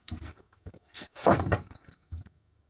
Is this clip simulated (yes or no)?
yes